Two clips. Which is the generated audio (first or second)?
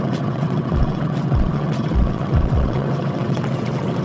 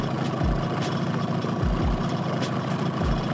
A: first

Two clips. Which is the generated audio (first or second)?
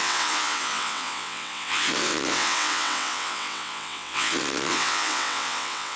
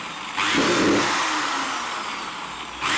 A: first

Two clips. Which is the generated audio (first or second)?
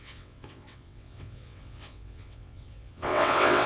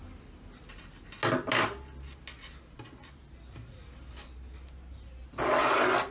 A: first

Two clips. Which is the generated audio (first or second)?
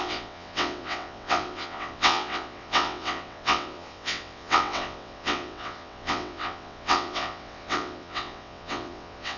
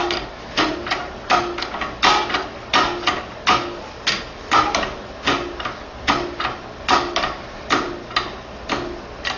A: first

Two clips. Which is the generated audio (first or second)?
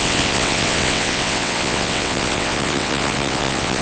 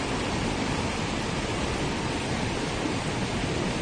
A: first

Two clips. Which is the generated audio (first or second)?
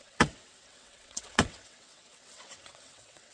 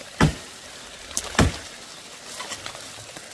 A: first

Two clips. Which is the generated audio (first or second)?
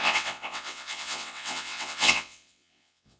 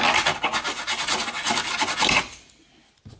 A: first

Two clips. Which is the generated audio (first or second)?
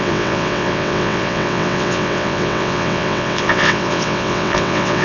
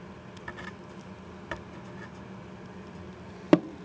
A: first